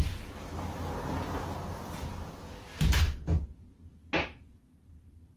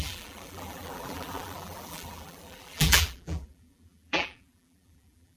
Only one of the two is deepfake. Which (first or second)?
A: second